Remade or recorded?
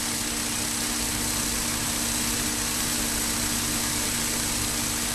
recorded